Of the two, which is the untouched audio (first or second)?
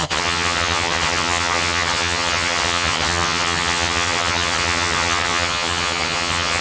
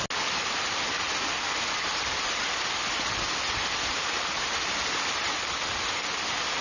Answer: second